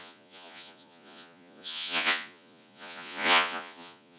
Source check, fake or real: fake